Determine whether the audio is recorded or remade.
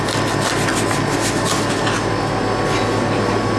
recorded